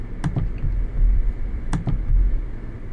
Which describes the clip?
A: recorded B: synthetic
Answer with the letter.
A